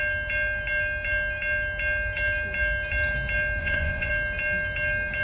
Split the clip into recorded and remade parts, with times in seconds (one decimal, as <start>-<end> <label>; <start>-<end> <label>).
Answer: 0.0-3.6 recorded; 3.6-4.1 remade; 4.1-5.2 recorded